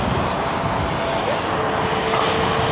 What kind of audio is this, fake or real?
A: real